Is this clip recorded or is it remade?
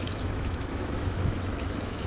remade